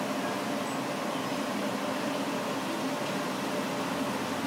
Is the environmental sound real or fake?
real